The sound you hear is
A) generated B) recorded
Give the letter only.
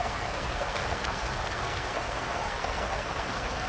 A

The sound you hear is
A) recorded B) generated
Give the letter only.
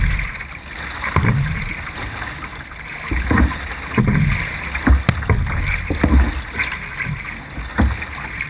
A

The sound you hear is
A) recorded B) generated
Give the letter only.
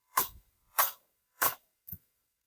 B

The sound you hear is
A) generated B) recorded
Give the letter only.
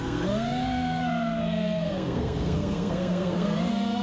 A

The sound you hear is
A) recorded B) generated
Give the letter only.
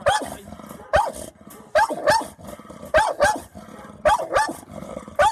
A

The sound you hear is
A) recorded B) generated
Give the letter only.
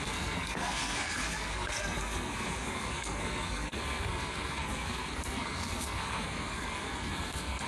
B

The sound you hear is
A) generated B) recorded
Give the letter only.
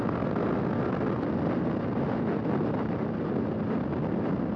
B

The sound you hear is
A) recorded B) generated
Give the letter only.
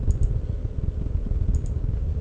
A